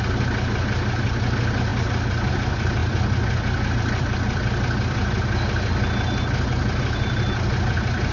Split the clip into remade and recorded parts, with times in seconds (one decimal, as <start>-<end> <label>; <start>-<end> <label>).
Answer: 0.0-8.1 recorded